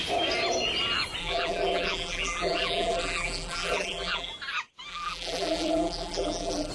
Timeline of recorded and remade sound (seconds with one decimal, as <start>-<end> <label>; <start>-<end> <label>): 0.0-1.2 recorded; 1.2-4.3 remade; 4.3-4.9 recorded; 4.9-6.7 remade